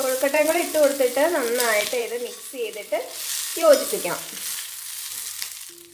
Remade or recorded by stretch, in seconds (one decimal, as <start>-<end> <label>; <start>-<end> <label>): 0.0-0.6 remade; 0.6-2.0 recorded; 2.0-3.0 remade; 3.0-3.5 recorded; 3.5-4.1 remade; 4.1-5.9 recorded